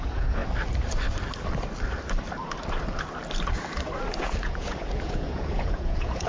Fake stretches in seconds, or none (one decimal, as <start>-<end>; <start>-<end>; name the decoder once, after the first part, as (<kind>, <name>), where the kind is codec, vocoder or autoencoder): 0.0-0.4 (vocoder, Vocos); 4.2-6.3